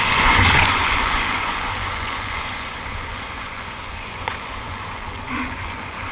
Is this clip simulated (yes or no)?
yes